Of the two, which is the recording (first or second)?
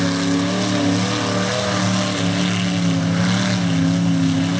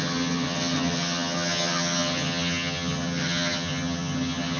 first